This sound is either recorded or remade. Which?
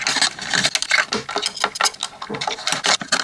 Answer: recorded